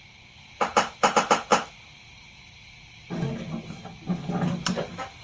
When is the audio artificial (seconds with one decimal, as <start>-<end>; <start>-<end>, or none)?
none